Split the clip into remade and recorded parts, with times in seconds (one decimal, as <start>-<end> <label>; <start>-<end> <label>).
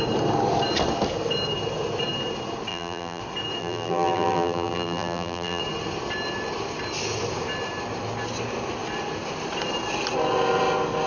0.0-2.7 recorded; 2.7-3.2 remade; 3.2-3.6 recorded; 3.6-5.6 remade; 5.6-11.1 recorded